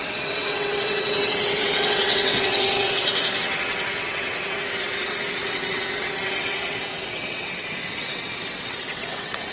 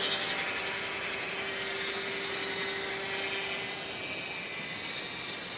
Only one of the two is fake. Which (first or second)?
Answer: first